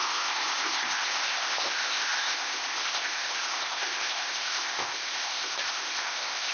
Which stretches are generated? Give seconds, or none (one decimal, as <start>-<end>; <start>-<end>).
0.0-6.5